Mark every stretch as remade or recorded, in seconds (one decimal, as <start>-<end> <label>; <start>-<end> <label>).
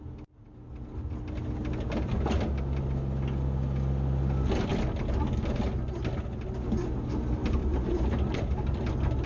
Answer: 0.0-7.6 recorded; 7.6-8.8 remade; 8.8-9.3 recorded